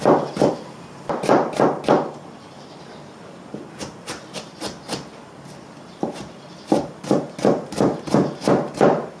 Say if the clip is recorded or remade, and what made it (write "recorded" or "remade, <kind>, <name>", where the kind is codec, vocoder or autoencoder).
remade, vocoder, BigVGAN v2